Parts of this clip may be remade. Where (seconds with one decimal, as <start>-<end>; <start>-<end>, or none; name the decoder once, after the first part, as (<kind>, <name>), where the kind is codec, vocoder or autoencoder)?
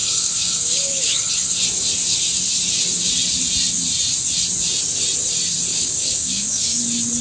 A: 0.0-1.3 (codec, DAC); 5.7-6.8